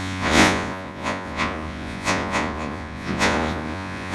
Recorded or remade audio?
remade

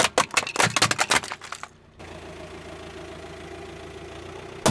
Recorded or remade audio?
recorded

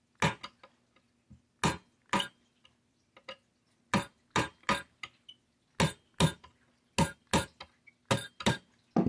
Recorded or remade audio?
recorded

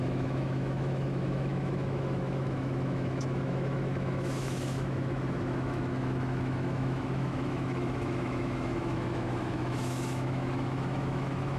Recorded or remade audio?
remade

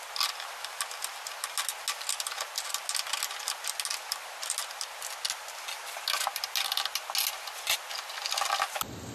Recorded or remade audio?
recorded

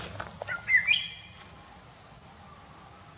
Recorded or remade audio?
recorded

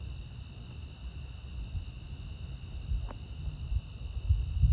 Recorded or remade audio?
recorded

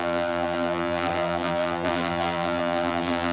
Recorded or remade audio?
remade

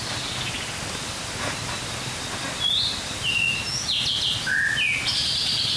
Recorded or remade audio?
recorded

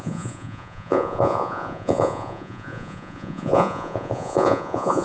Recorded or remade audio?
remade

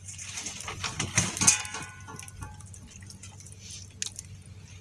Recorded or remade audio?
recorded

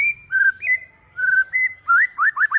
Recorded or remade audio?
remade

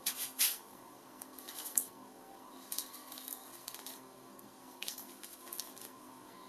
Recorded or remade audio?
remade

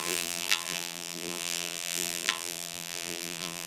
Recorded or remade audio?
remade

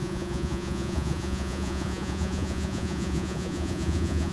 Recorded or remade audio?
remade